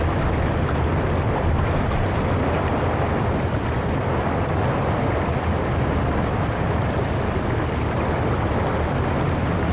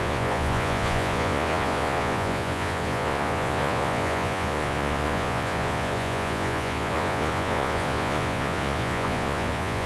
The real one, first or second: first